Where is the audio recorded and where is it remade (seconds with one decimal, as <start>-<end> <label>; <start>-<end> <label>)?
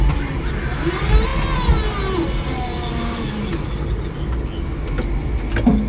0.0-5.9 recorded